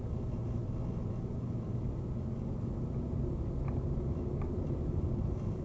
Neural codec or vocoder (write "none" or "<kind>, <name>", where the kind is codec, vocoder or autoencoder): none